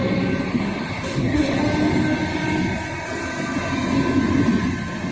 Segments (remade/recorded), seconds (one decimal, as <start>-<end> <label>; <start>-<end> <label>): 0.0-0.5 recorded; 0.5-1.6 remade; 1.6-5.1 recorded